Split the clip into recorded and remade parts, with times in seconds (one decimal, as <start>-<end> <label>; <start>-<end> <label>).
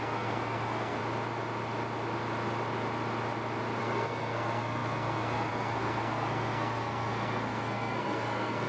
0.0-1.0 remade; 1.0-3.8 recorded; 3.8-8.7 remade